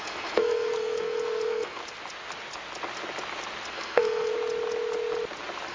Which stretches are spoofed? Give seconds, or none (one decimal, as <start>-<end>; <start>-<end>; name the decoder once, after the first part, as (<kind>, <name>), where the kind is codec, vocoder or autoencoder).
0.0-1.8 (codec, SNAC); 3.7-4.3